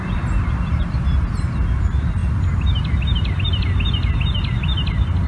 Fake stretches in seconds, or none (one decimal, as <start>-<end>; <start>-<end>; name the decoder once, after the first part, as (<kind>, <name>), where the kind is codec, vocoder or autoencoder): none